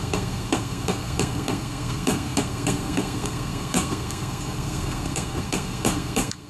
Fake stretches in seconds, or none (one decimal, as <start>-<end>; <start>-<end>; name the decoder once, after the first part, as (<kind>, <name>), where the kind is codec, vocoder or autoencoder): 0.0-6.5 (codec, SNAC)